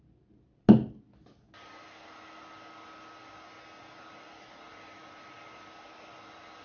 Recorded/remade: recorded